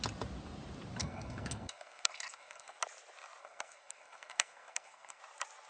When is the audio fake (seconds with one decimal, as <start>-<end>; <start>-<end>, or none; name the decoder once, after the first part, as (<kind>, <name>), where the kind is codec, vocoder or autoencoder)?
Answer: 1.0-2.8 (codec, SNAC); 3.4-5.2

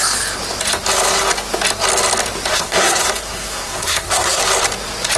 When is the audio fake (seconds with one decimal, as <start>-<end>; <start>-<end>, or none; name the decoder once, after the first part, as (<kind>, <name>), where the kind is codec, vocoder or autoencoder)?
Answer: 2.5-4.4 (codec, SNAC)

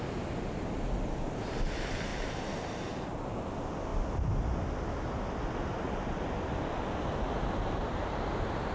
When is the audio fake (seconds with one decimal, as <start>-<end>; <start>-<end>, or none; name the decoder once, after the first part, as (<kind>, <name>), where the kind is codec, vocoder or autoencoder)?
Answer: 2.1-2.7 (vocoder, BigVGAN v2)